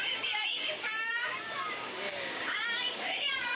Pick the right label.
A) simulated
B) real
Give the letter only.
A